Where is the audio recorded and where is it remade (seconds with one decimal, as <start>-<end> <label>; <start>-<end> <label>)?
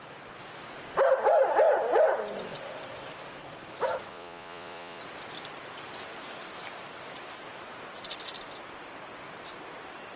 0.0-4.1 recorded; 4.1-5.0 remade; 5.0-10.2 recorded